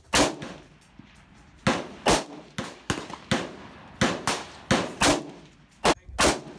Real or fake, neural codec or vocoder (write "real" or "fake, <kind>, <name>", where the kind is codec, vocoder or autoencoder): real